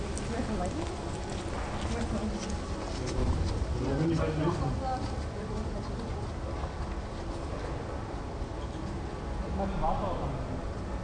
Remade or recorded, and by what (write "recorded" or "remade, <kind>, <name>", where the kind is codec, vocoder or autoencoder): recorded